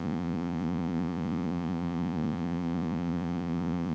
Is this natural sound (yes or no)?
no